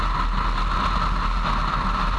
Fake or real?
real